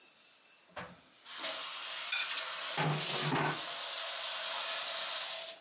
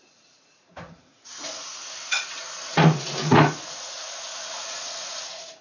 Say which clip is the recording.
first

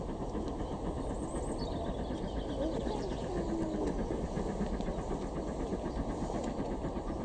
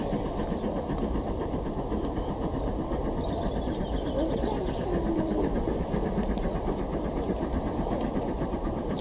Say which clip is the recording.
first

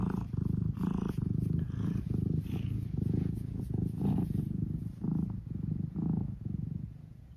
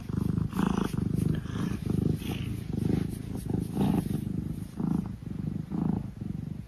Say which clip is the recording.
second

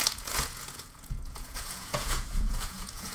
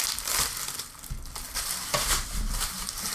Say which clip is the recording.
second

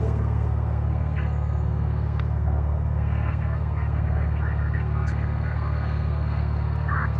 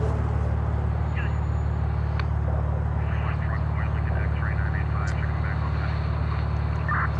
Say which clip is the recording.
second